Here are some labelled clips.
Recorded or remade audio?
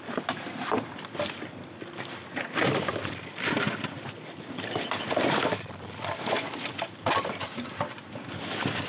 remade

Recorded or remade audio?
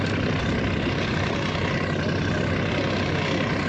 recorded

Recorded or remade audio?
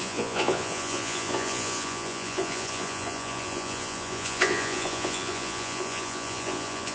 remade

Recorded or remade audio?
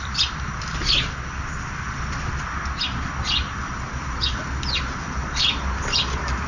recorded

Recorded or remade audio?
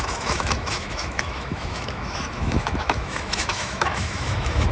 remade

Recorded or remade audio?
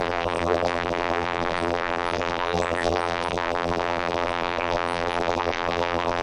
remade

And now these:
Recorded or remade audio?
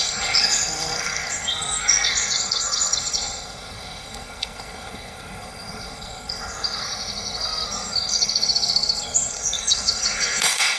remade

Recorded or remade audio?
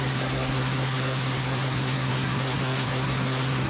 remade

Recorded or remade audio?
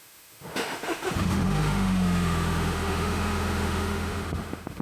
remade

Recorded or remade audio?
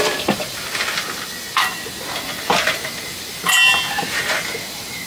recorded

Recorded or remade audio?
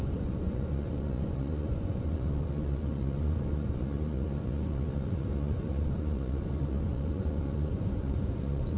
remade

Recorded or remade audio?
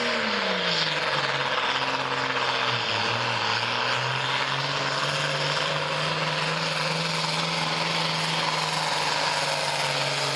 recorded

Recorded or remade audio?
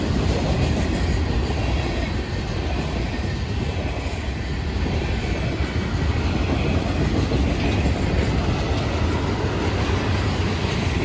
recorded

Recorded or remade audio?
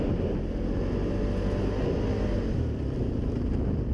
recorded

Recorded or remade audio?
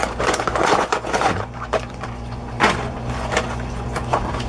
remade